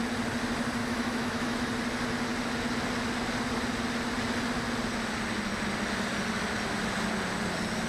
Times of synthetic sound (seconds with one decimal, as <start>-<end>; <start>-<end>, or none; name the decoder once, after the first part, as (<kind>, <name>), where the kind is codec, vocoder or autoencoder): 0.8-1.7 (autoencoder, DAC-VAE)